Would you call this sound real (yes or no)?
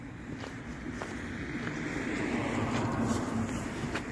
yes